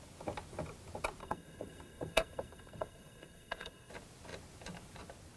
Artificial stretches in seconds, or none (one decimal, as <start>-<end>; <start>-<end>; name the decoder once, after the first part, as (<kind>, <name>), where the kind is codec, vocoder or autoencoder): 1.2-3.9 (codec, SNAC)